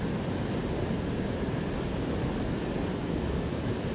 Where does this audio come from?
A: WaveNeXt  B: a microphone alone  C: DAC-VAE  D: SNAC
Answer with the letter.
B